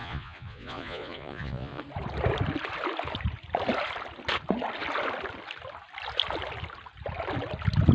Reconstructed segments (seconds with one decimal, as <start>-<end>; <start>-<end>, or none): 0.0-1.8